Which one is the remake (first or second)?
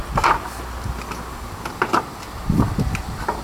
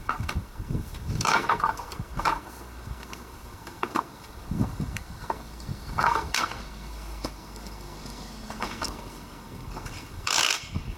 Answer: second